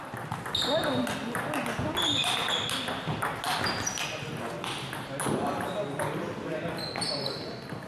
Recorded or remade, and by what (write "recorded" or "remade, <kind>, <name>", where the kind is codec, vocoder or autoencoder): recorded